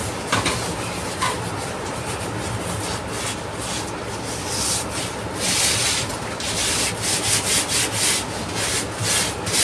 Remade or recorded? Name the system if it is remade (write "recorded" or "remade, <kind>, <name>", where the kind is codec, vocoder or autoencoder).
recorded